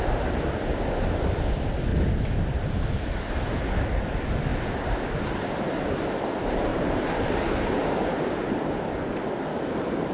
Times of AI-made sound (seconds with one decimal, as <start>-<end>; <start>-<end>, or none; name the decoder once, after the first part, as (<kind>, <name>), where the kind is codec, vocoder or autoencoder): 6.7-8.9 (vocoder, BigVGAN v2)